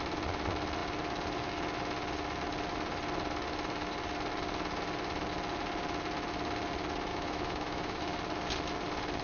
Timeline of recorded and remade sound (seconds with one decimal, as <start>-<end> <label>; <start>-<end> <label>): 0.0-7.1 recorded; 7.1-8.0 remade; 8.0-9.2 recorded